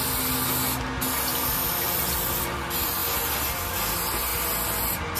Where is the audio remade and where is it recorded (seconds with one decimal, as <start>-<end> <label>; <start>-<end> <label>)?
0.0-5.2 recorded